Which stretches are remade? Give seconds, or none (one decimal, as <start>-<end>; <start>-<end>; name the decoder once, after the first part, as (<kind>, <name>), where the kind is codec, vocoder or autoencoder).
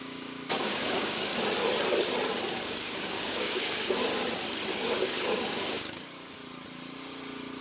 0.0-1.3 (codec, DAC); 2.5-4.1; 4.7-6.4